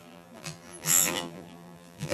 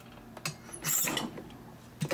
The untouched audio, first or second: second